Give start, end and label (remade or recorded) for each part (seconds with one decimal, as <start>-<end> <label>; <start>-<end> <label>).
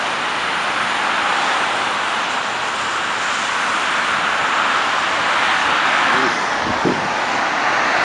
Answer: 0.0-5.6 recorded; 5.6-7.4 remade; 7.4-8.0 recorded